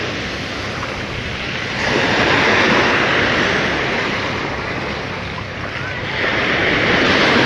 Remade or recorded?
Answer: recorded